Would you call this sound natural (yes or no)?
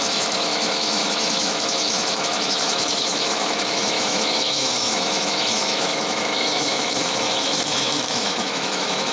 no